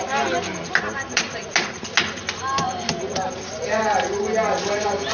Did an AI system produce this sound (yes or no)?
no